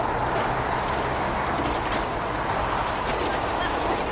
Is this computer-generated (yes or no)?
no